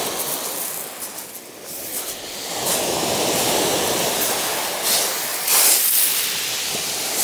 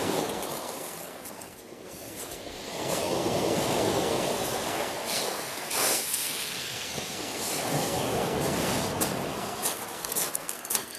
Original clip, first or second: first